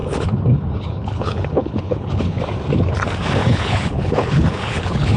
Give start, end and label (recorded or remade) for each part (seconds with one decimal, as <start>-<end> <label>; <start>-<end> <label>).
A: 0.0-2.4 remade; 2.4-3.4 recorded; 3.4-5.2 remade